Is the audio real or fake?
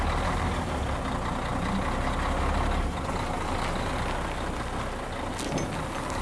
real